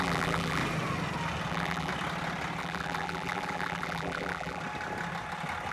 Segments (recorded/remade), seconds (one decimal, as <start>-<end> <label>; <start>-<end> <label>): 0.0-0.6 remade; 0.6-1.5 recorded; 1.5-1.9 remade; 1.9-2.6 recorded; 2.6-4.6 remade; 4.6-5.7 recorded